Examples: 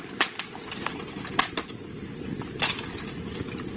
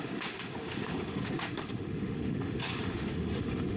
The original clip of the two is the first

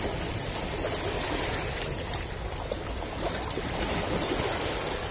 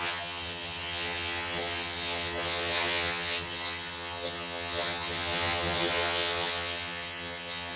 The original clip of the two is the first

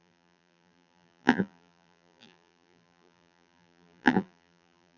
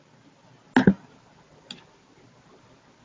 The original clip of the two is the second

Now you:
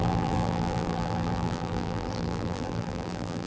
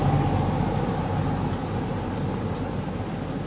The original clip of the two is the second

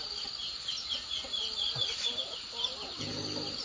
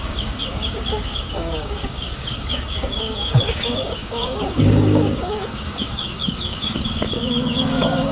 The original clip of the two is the first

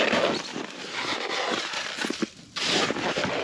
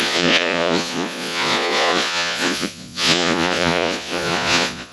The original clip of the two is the first